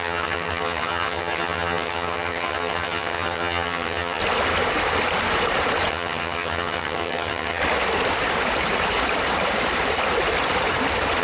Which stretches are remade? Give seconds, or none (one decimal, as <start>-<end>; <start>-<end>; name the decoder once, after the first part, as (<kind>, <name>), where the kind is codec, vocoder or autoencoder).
0.0-4.2 (vocoder, HiFi-GAN); 5.9-7.6